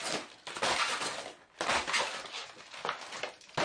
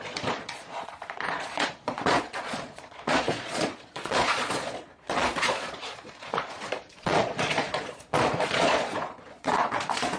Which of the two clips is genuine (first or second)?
first